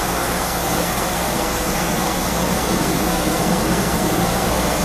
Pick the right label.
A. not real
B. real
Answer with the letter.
A